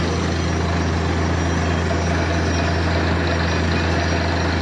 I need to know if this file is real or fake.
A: real